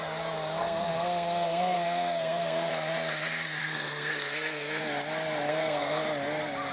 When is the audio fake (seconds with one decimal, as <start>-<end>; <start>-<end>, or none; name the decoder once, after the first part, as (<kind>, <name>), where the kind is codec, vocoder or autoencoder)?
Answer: 0.6-2.7 (codec, SNAC); 3.6-4.8; 5.5-6.0